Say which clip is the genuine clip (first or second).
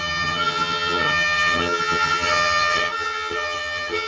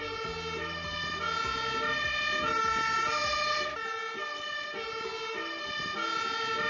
second